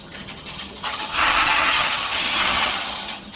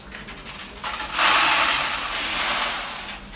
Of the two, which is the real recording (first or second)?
second